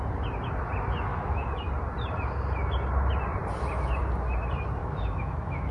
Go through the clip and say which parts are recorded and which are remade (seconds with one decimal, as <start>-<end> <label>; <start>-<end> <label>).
0.0-1.1 recorded; 1.1-1.7 remade; 1.7-4.8 recorded; 4.8-5.7 remade